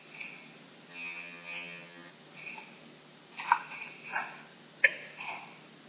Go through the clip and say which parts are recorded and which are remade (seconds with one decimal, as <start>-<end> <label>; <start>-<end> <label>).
0.0-0.9 recorded; 0.9-2.1 remade; 2.1-5.9 recorded